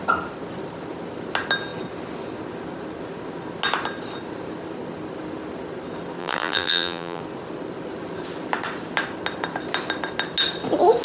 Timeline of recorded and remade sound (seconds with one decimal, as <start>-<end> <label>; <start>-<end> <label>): 0.0-6.2 recorded; 6.2-7.2 remade; 7.2-11.0 recorded